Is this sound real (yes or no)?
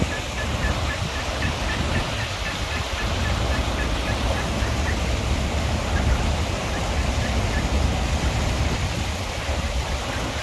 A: yes